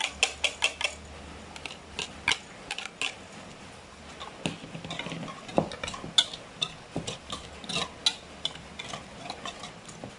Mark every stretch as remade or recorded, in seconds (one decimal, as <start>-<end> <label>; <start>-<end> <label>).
0.0-10.2 recorded